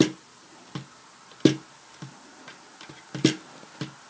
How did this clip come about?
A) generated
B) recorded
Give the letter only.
B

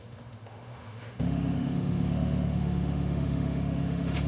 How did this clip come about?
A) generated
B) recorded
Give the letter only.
A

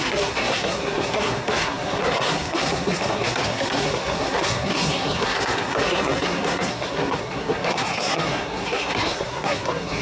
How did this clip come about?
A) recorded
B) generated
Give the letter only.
B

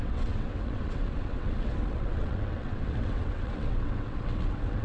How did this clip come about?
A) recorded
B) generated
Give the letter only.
B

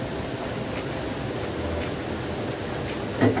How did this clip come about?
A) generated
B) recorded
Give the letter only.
B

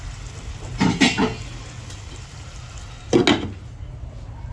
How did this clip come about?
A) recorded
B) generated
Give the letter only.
A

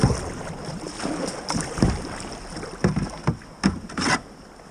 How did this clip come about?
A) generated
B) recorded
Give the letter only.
B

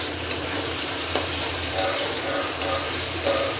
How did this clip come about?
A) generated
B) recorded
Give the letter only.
A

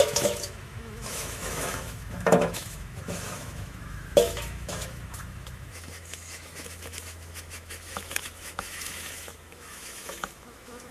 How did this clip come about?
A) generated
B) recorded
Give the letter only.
A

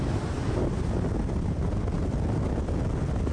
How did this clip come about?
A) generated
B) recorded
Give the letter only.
B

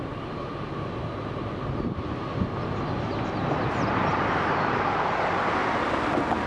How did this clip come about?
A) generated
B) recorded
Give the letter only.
B